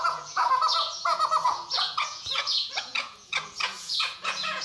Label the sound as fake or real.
fake